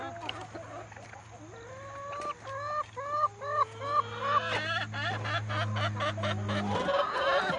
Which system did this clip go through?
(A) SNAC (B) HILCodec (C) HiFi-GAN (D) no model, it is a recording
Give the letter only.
D